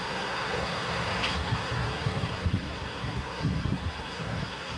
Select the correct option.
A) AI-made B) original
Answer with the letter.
A